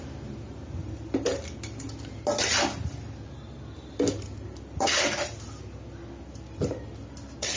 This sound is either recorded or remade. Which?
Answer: recorded